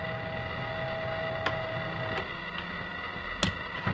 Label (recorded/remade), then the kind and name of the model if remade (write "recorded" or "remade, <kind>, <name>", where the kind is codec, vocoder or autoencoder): recorded